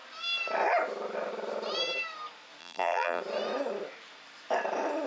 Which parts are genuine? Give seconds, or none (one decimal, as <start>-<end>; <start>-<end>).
0.0-2.6; 3.2-5.1